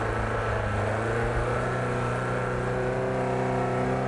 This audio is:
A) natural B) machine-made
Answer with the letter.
A